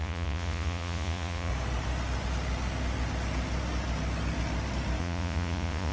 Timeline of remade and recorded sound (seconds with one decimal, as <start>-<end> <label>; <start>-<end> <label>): 0.0-1.5 remade; 1.5-5.0 recorded; 5.0-5.9 remade